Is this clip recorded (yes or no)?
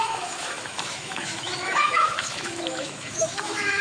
no